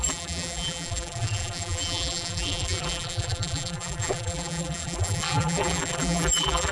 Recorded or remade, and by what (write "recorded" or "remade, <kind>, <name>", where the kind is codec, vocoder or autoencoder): remade, vocoder, BigVGAN v2